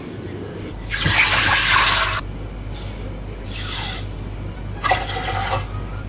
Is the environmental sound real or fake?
real